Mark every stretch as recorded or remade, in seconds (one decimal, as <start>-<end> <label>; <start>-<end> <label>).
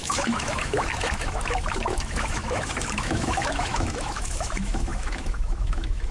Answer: 0.0-6.1 remade